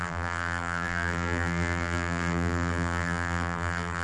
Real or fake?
fake